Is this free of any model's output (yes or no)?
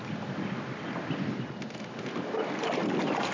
yes